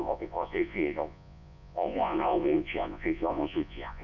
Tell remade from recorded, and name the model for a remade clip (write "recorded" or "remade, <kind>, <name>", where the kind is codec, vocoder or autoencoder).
remade, vocoder, Vocos